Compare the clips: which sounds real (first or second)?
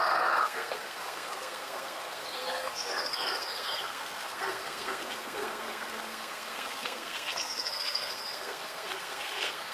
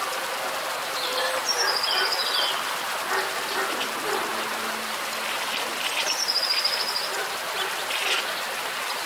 second